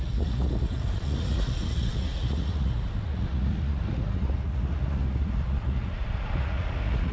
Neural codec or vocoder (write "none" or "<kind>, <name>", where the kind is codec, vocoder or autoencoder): vocoder, Vocos